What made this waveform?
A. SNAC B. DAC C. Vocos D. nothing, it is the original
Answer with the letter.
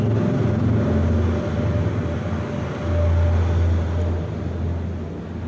D